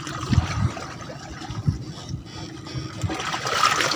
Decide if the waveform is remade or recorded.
recorded